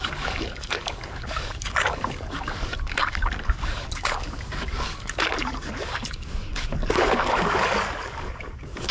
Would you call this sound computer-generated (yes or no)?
yes